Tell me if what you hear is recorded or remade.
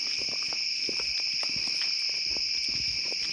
recorded